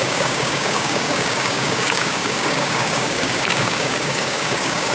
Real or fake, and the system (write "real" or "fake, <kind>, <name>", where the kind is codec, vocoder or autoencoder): fake, codec, DAC